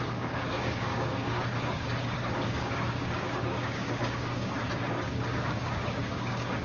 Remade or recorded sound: remade